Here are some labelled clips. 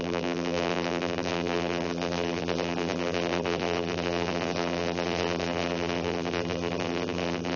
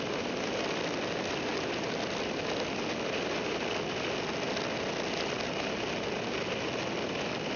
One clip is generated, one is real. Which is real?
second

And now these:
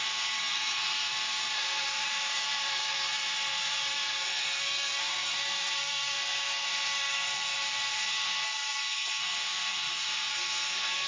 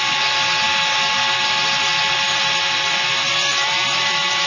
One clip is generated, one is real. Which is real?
second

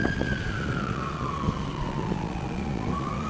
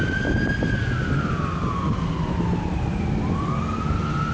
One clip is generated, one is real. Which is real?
second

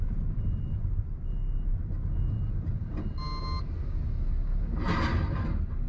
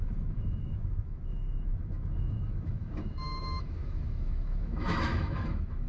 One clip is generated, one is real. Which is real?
first